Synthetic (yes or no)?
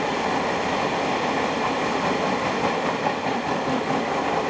no